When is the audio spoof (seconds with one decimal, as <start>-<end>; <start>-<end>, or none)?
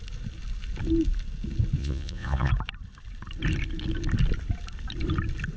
1.8-2.5